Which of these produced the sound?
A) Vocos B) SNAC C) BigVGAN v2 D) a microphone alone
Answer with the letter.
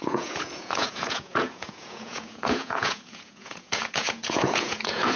A